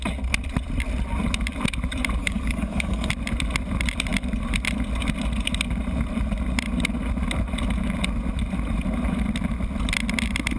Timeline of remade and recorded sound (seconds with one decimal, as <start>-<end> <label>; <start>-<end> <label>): 0.0-2.2 recorded; 2.2-3.1 remade; 3.1-10.6 recorded